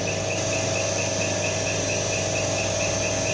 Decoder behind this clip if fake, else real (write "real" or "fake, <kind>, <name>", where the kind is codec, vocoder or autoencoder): real